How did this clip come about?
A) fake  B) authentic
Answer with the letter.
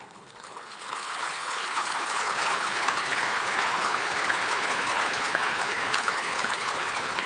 A